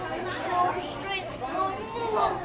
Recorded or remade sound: recorded